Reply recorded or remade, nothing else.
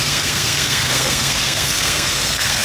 remade